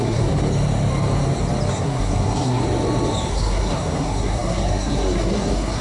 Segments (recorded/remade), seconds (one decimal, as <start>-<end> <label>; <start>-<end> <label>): 0.0-0.4 remade; 0.4-1.7 recorded; 1.7-2.6 remade; 2.6-3.3 recorded; 3.3-5.8 remade

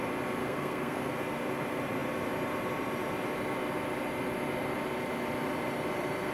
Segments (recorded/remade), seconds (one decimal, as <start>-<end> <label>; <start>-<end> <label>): 0.0-0.4 recorded; 0.4-1.1 remade; 1.1-6.3 recorded

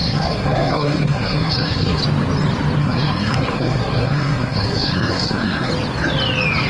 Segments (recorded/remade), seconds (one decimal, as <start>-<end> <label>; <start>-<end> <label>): 0.0-2.0 remade; 2.0-2.8 recorded; 2.8-5.7 remade; 5.7-6.7 recorded

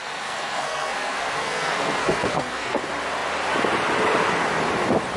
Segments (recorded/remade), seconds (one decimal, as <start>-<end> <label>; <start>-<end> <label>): 0.0-2.8 remade; 2.8-5.2 recorded

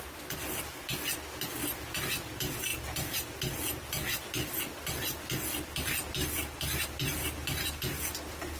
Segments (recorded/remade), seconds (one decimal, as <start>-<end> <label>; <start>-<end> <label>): 0.0-8.6 recorded

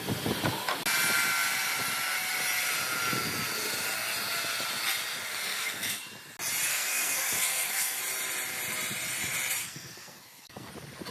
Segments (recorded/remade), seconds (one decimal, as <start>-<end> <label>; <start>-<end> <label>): 0.0-5.3 recorded; 5.3-6.0 remade; 6.0-6.7 recorded; 6.7-8.0 remade; 8.0-9.6 recorded; 9.6-10.7 remade; 10.7-11.1 recorded